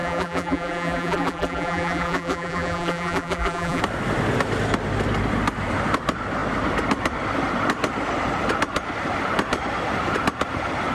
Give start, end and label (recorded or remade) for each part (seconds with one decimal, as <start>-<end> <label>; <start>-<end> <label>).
0.0-3.8 remade; 3.8-10.9 recorded